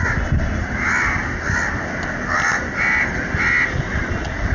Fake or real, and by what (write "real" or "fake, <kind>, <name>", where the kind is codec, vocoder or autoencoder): real